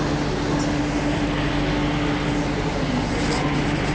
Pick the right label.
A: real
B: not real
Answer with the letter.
A